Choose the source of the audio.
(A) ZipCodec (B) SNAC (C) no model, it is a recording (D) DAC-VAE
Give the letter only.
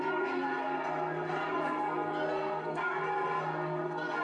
B